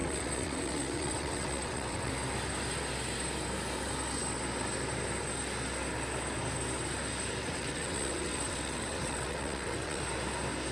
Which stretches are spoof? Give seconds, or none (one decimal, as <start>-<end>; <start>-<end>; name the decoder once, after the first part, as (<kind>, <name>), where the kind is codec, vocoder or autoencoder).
0.0-2.1 (vocoder, WaveNeXt); 7.4-10.0